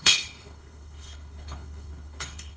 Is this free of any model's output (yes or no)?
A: no